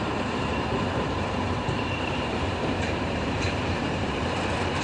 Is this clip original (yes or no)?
no